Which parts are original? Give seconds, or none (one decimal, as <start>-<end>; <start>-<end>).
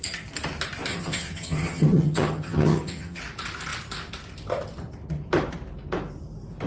0.0-0.9; 3.2-6.7